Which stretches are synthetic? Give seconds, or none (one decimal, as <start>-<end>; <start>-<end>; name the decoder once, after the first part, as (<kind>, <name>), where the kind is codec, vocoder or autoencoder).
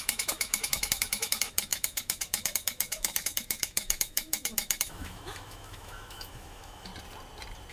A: 0.0-6.9 (autoencoder, DAC-VAE)